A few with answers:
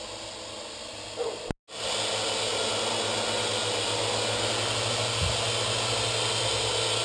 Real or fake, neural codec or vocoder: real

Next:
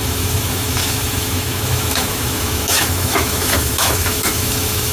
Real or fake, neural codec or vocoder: fake, autoencoder, DAC-VAE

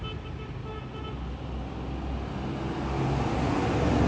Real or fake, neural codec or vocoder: real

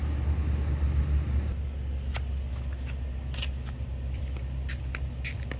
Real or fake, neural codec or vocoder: real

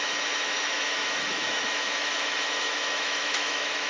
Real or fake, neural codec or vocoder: fake, autoencoder, DAC-VAE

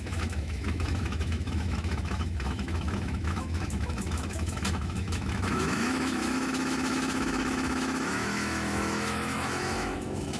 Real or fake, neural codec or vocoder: fake, autoencoder, DAC-VAE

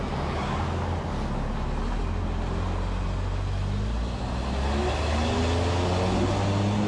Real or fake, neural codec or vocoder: real